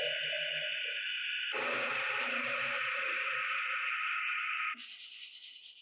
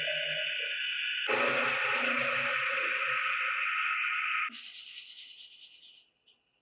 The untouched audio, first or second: second